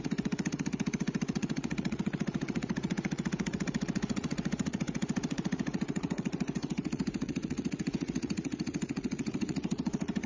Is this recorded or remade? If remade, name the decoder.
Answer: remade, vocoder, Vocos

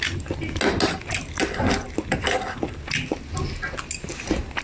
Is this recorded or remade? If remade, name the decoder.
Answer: recorded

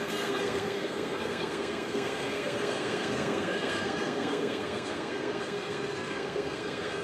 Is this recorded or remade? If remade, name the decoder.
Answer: remade, codec, SNAC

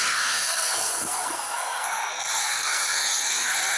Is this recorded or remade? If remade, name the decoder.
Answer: remade, codec, SNAC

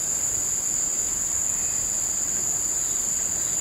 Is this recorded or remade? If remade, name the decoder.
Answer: recorded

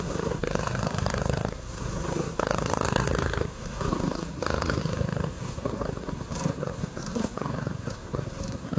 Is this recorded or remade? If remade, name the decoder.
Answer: remade, codec, SNAC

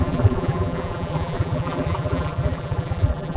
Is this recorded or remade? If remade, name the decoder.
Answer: remade, vocoder, BigVGAN v2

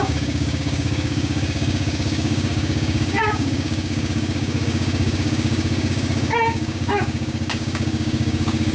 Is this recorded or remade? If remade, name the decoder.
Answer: remade, codec, DAC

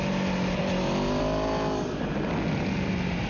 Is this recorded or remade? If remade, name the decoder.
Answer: recorded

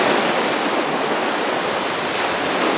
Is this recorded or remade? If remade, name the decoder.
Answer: recorded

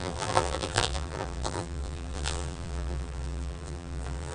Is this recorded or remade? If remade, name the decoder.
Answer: remade, vocoder, BigVGAN v2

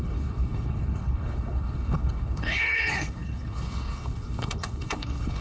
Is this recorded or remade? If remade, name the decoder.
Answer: remade, codec, HILCodec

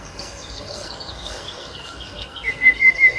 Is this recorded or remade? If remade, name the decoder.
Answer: remade, codec, SNAC